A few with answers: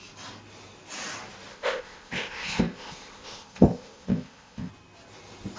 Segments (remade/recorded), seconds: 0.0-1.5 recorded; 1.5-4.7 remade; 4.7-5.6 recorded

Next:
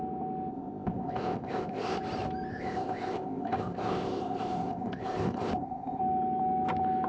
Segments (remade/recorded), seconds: 0.0-0.5 recorded; 0.5-2.0 remade; 2.0-2.5 recorded; 2.5-6.0 remade; 6.0-7.1 recorded

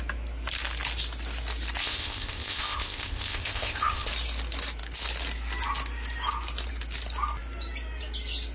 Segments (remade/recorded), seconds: 0.0-1.8 recorded; 1.8-4.1 remade; 4.1-8.5 recorded

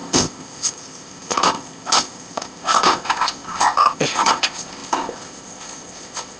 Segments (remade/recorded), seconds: 0.0-6.4 remade

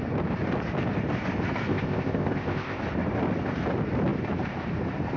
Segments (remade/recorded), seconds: 0.0-1.7 recorded; 1.7-2.8 remade; 2.8-5.2 recorded

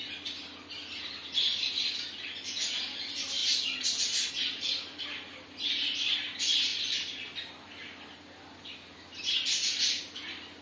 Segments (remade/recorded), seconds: 0.0-10.6 recorded

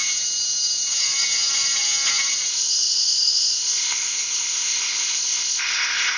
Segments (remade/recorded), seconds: 0.0-2.5 recorded; 2.5-6.2 remade